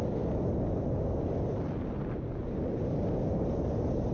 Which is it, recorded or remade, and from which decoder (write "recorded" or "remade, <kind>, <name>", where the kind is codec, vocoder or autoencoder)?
recorded